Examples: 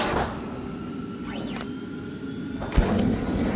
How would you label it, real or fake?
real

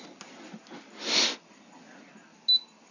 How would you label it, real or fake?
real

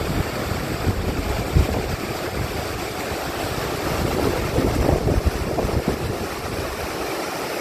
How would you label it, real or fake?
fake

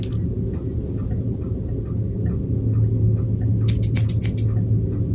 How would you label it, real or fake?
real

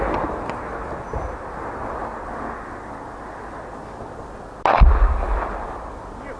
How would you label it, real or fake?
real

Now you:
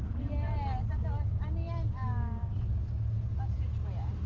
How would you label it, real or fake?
real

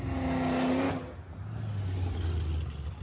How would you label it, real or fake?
real